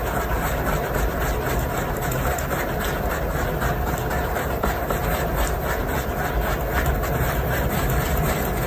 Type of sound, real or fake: real